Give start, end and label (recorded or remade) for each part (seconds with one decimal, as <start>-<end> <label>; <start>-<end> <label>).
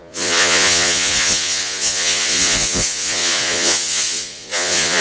0.0-5.0 remade